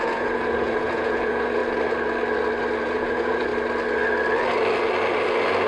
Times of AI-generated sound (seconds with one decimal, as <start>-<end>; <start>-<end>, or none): 0.0-1.6; 2.8-3.5